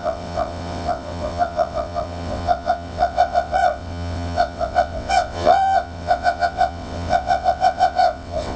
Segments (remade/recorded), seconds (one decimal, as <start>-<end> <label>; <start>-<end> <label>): 0.0-8.6 remade